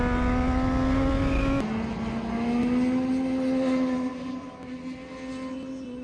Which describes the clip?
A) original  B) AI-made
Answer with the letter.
A